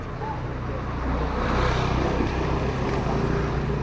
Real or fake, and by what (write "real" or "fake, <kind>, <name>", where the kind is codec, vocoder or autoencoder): real